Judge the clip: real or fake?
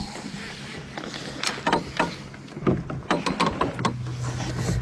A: real